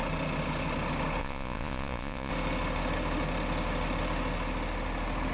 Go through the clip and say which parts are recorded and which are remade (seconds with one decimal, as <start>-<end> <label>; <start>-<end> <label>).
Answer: 0.0-1.2 recorded; 1.2-2.3 remade; 2.3-5.3 recorded